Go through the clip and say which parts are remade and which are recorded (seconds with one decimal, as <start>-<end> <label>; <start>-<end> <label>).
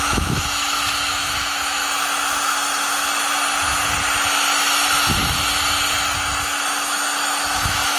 0.0-1.8 remade; 1.8-6.6 recorded; 6.6-8.0 remade